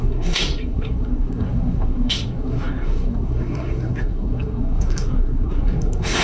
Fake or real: fake